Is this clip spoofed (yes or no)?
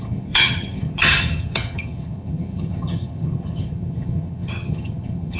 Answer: yes